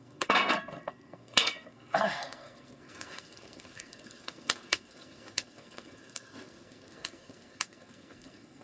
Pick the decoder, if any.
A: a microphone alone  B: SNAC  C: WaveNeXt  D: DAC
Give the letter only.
B